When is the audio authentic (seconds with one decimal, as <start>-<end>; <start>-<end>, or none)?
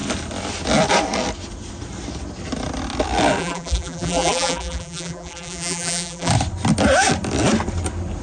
0.0-3.4; 6.3-8.2